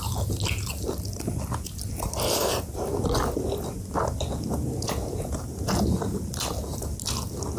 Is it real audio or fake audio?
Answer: real